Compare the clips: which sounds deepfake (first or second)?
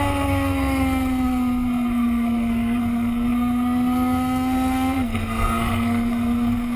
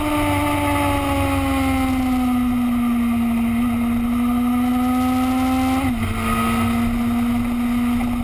first